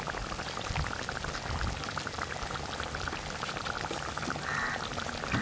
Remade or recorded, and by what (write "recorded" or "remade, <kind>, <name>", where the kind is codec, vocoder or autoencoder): recorded